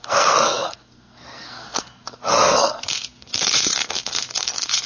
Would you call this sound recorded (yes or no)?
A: no